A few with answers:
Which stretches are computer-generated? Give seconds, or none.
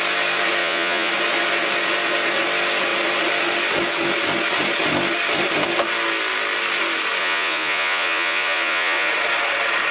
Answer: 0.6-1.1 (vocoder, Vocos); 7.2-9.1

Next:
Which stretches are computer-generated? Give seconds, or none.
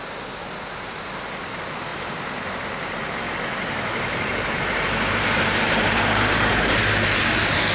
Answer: 1.9-6.5 (vocoder, BigVGAN v2)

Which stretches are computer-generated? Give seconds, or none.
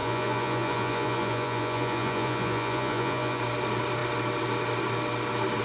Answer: 0.0-3.4 (vocoder, Vocos)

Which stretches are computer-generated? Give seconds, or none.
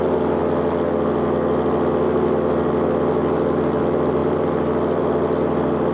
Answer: 4.2-5.1 (vocoder, BigVGAN v2)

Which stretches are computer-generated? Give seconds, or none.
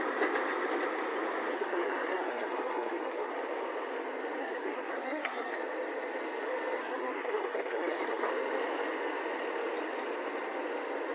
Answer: 1.5-3.3 (codec, SNAC); 4.4-5.5; 6.8-8.3